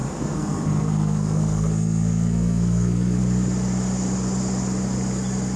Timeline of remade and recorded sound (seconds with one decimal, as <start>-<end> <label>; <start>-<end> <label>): 0.0-3.2 remade; 3.2-5.6 recorded